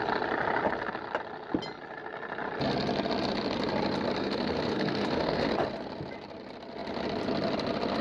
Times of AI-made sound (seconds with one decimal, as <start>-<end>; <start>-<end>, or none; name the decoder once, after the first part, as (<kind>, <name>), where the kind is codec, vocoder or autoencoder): 4.2-5.5 (codec, SNAC)